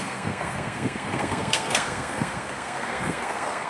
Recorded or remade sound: remade